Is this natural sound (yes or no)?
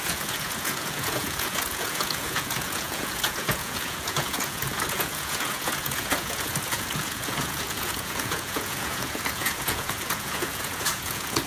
no